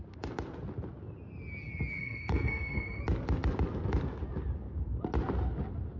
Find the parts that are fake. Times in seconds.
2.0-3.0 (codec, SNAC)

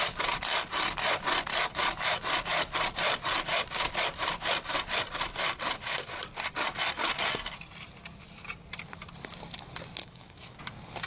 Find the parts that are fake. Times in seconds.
10.0-10.6 (autoencoder, DAC-VAE)

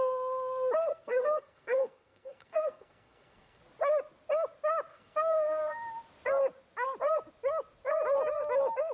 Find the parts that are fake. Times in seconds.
0.9-3.6 (codec, SNAC); 4.9-5.6